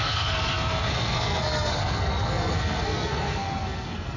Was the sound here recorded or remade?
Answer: remade